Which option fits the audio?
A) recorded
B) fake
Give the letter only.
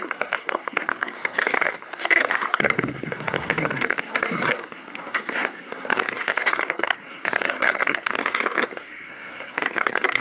B